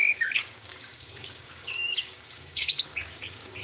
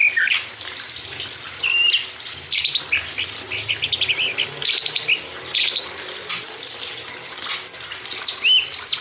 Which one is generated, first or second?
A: first